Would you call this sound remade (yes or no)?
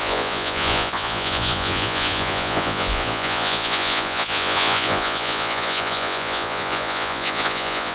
yes